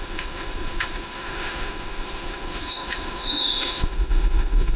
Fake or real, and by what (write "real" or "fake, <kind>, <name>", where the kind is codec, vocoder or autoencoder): fake, autoencoder, DAC-VAE